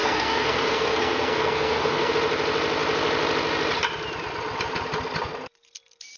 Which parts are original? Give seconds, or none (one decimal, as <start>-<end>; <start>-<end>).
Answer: 2.1-6.2